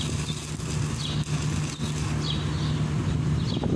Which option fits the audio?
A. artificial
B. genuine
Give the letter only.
B